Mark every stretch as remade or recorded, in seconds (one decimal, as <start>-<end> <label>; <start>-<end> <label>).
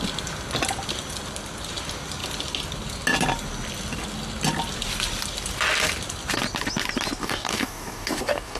0.0-7.2 recorded; 7.2-8.6 remade